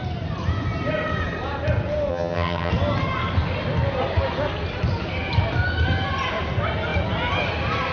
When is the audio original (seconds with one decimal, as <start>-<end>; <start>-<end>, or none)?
0.0-2.1; 2.7-7.9